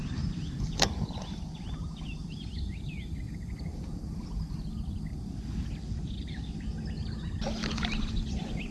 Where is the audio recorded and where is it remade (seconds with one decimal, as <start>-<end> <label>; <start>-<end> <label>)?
0.0-3.7 remade; 3.7-7.7 recorded; 7.7-8.7 remade